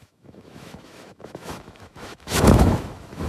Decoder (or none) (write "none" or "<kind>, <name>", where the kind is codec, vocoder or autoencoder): autoencoder, DAC-VAE